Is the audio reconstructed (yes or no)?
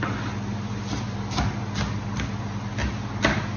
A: no